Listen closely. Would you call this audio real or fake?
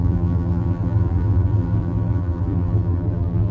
fake